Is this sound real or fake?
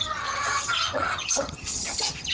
fake